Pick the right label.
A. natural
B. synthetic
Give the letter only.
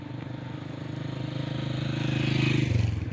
A